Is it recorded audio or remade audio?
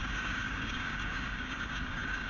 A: remade